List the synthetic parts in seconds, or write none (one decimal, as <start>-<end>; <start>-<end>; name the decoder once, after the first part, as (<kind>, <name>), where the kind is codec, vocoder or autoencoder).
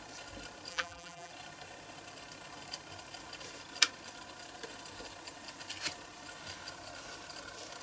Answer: 0.7-1.3 (vocoder, BigVGAN v2)